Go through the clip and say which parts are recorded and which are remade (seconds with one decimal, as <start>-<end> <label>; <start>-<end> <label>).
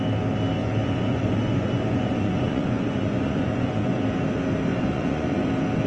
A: 0.0-0.6 recorded; 0.6-4.0 remade; 4.0-4.7 recorded; 4.7-5.5 remade; 5.5-5.9 recorded